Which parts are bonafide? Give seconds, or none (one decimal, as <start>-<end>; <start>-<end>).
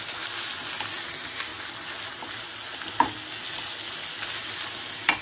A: 0.0-5.2